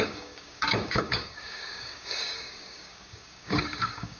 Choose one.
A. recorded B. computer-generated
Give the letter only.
B